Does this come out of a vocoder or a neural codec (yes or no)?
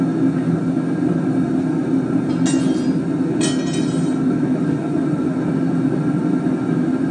no